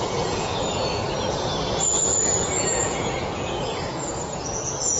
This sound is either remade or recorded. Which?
remade